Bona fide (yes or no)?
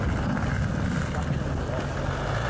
yes